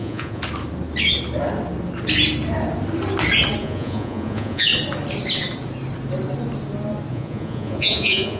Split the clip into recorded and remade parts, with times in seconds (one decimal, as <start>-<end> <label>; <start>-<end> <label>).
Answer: 0.0-0.4 remade; 0.4-3.6 recorded; 3.6-4.7 remade; 4.7-7.1 recorded; 7.1-8.4 remade